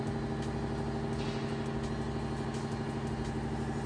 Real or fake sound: real